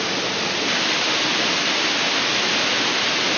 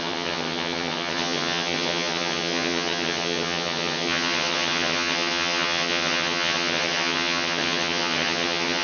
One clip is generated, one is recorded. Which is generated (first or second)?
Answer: second